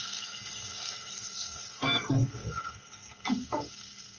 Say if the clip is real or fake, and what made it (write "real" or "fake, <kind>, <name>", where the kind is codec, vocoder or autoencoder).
fake, codec, SNAC